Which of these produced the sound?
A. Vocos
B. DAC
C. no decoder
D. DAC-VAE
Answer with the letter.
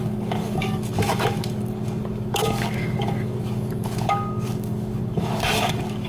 B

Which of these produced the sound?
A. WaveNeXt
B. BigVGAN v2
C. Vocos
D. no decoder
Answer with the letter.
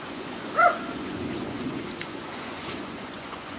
C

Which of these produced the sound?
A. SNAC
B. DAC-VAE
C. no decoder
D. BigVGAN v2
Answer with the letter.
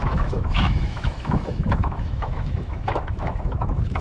B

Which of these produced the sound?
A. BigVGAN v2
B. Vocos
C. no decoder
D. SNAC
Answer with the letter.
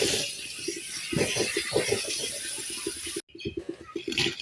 C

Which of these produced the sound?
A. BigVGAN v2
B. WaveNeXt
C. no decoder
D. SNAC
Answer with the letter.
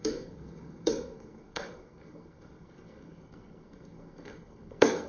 D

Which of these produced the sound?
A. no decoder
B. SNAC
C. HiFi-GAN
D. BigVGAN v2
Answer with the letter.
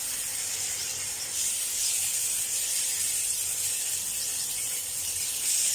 A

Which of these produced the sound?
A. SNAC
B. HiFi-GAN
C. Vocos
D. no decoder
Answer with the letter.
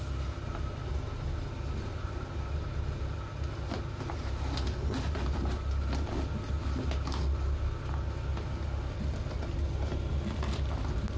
D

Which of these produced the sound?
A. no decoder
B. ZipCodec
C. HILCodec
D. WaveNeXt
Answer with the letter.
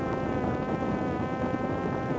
A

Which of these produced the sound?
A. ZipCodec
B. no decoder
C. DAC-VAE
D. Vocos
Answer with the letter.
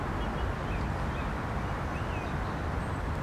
B